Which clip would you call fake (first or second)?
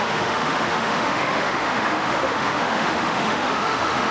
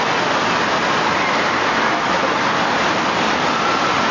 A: first